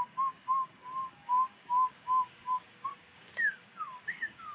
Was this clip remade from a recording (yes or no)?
yes